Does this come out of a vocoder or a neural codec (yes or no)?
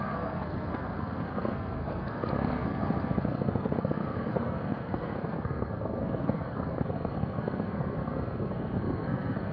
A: yes